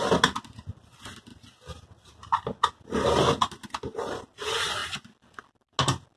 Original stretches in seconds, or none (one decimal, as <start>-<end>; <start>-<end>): 0.0-6.2